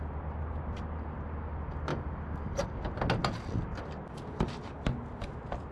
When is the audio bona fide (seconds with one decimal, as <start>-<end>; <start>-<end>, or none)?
0.0-1.9; 2.6-5.7